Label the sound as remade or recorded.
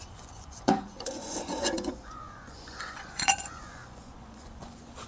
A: remade